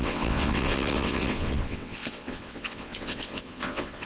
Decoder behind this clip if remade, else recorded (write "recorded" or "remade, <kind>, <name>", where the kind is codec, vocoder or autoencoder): remade, vocoder, WaveNeXt